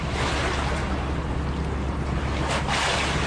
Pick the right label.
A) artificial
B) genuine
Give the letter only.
B